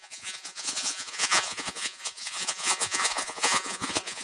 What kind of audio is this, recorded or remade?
remade